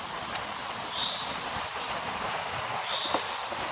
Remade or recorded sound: remade